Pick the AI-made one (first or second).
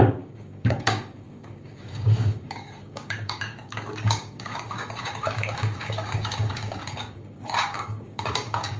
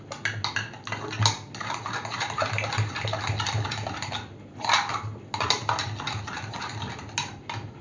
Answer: first